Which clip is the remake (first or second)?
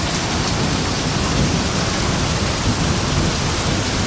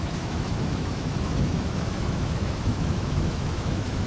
second